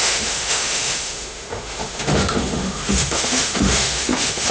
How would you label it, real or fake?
fake